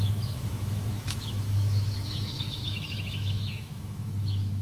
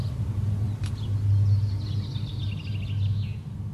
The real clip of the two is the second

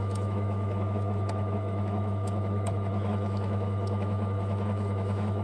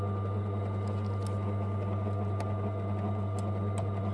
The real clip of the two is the second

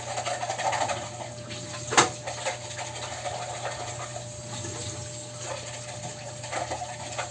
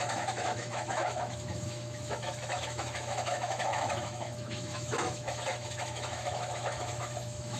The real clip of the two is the first